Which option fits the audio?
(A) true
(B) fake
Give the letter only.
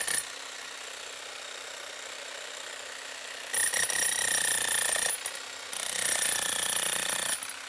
A